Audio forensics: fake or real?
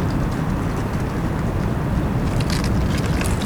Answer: real